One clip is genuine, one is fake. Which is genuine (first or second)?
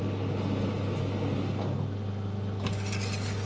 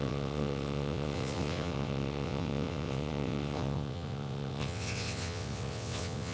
first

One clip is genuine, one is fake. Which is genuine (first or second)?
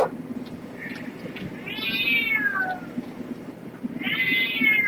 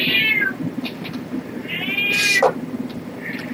first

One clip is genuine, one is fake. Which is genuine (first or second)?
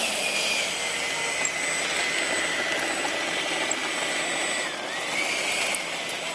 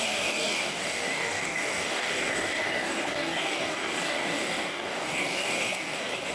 first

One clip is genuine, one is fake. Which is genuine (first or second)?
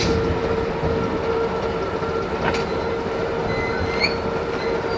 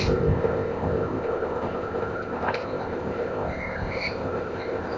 first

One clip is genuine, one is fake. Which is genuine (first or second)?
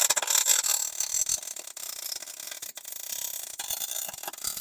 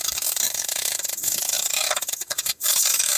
first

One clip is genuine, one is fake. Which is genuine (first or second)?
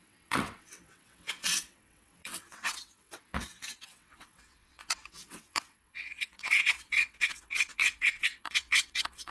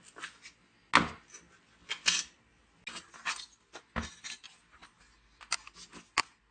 second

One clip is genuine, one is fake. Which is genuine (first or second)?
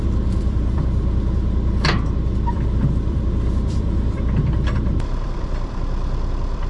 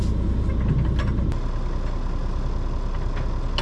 second